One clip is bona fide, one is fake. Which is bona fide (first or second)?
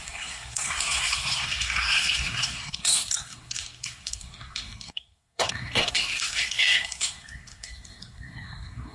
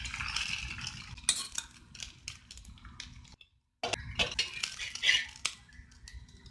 second